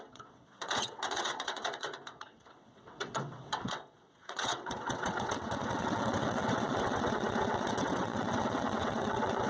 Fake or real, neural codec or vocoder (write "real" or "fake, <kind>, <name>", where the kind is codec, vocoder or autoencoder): fake, vocoder, WaveNeXt